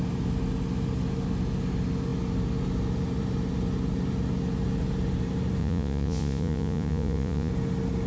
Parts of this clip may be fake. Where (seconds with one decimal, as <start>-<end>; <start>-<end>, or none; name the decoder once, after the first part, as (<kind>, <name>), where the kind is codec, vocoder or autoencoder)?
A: 5.6-7.5 (vocoder, Vocos)